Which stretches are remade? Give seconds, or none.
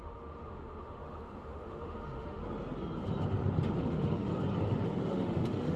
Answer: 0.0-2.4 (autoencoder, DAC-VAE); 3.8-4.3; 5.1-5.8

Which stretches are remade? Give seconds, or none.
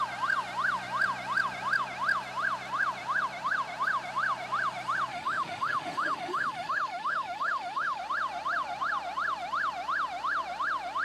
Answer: 5.1-8.0 (autoencoder, DAC-VAE)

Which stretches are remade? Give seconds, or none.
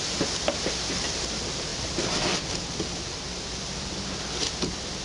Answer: none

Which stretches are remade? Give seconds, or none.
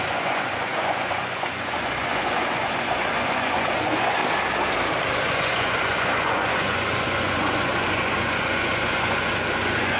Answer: 0.0-4.2 (vocoder, Vocos); 5.1-10.0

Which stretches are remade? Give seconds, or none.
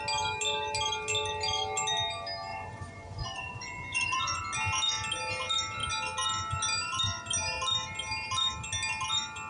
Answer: 2.5-4.4 (vocoder, Vocos)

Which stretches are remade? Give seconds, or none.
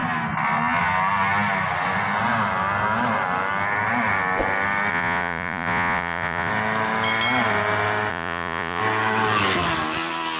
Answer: 4.9-6.5 (vocoder, Vocos); 8.1-8.8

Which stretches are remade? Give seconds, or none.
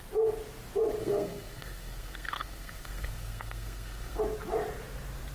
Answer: 1.0-4.2 (codec, SNAC)